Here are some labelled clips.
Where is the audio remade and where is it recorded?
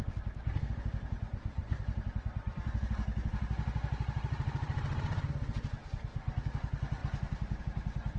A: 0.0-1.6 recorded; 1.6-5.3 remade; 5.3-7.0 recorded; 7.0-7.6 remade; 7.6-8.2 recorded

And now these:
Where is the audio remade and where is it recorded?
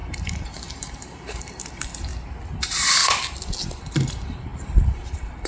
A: 0.0-2.1 remade; 2.1-2.6 recorded; 2.6-3.0 remade; 3.0-3.8 recorded; 3.8-5.5 remade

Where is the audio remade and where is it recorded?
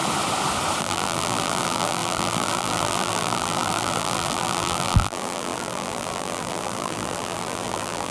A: 0.0-0.8 recorded; 0.8-8.1 remade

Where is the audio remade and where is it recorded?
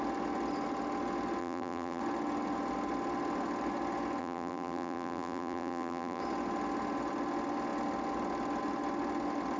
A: 0.0-1.4 recorded; 1.4-2.0 remade; 2.0-4.2 recorded; 4.2-6.2 remade; 6.2-9.6 recorded